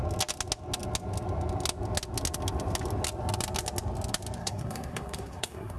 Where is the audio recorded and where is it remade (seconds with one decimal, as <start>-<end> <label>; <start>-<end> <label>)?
0.0-4.4 recorded; 4.4-5.8 remade